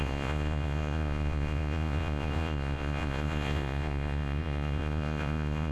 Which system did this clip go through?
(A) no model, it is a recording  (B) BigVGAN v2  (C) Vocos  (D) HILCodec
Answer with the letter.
C